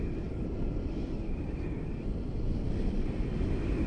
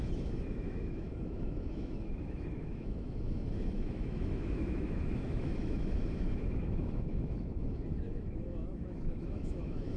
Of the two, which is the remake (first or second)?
second